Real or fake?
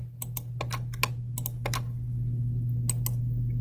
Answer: real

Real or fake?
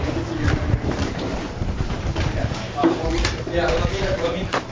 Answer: fake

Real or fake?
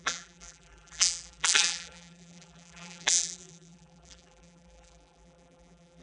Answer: fake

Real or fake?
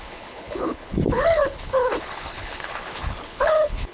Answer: fake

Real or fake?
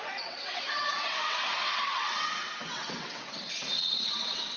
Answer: fake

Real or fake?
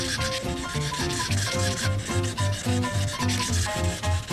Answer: real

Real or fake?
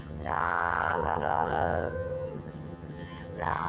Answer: fake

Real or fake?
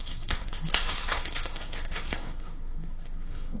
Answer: fake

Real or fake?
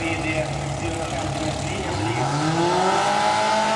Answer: real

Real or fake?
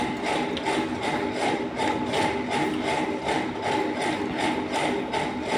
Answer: real